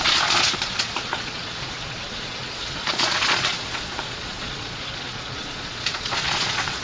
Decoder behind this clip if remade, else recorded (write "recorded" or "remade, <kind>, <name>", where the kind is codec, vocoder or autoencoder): remade, vocoder, Vocos